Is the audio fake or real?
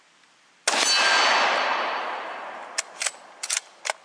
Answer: real